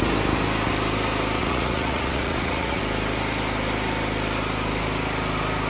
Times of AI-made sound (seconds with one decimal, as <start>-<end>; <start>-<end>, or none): 1.4-2.8